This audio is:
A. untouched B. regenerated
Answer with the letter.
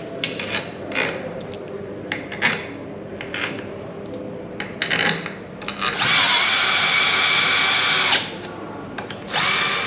A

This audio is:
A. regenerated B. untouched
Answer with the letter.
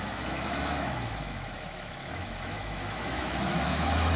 A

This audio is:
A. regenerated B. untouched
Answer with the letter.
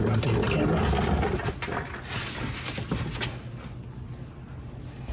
B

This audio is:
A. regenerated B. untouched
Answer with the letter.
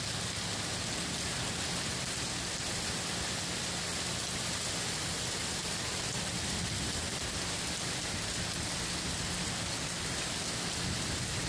B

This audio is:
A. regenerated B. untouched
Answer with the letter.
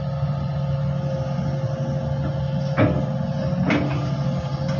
B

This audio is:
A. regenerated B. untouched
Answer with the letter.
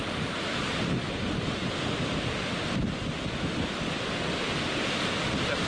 B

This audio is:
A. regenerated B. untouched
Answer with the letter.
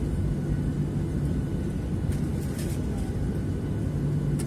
B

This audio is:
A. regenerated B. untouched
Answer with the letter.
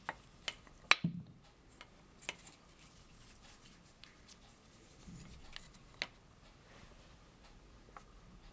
B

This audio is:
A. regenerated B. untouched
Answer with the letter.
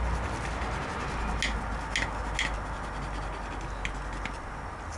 B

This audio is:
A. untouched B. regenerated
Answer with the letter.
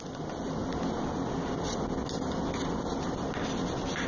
A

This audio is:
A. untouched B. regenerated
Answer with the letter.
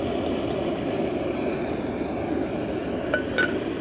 A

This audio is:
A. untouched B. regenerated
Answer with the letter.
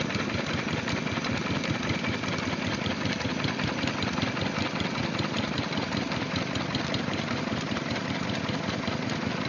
A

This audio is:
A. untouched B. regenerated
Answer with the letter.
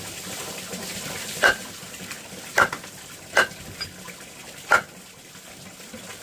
A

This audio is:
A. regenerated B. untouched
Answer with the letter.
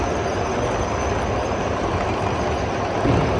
B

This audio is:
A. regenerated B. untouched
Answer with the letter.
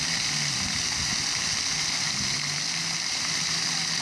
B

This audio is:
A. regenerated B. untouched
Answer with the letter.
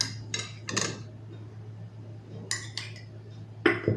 B